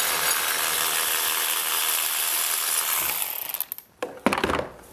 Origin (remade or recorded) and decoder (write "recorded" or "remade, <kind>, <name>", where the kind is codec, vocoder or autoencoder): recorded